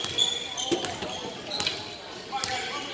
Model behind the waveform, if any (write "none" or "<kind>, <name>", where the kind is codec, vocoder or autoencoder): none